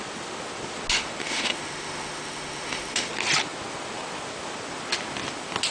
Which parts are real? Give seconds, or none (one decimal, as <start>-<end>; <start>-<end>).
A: 0.0-1.2; 3.1-5.7

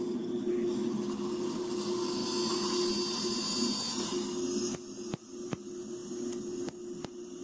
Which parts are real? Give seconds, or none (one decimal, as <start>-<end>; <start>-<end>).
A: 0.0-7.4

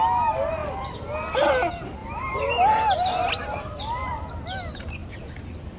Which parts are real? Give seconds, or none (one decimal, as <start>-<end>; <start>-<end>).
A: 0.0-0.6; 1.5-3.4; 4.3-5.0